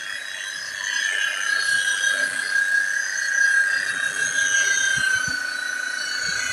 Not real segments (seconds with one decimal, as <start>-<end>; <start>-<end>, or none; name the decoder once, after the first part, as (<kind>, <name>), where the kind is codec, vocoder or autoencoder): none